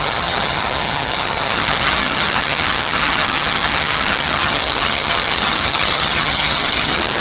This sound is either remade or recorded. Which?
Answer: remade